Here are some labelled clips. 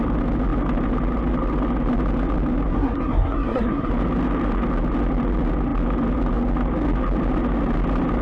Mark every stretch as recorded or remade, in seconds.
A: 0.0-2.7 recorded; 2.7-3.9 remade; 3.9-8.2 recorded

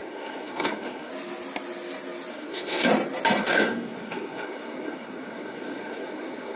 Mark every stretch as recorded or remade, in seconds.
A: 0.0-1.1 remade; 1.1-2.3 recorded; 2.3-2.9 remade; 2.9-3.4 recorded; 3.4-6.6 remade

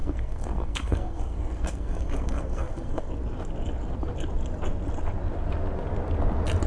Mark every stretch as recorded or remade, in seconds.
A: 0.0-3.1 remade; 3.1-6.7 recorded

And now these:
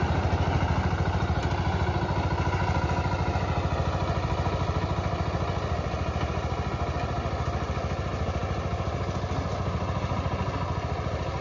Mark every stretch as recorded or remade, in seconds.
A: 0.0-11.4 recorded

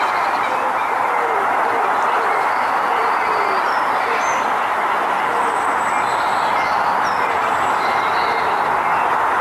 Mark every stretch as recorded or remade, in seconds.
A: 0.0-9.4 recorded

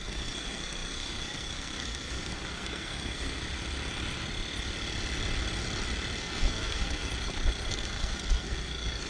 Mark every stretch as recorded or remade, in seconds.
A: 0.0-3.4 remade; 3.4-6.2 recorded; 6.2-7.1 remade; 7.1-7.7 recorded; 7.7-9.1 remade